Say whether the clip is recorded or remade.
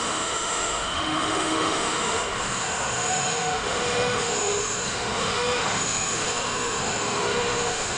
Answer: remade